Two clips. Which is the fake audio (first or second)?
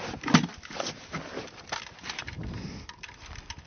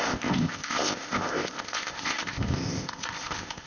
second